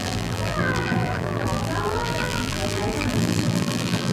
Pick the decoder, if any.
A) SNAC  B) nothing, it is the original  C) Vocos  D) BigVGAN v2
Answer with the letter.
D